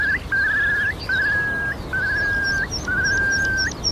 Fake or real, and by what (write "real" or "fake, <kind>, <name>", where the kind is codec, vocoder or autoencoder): fake, vocoder, BigVGAN v2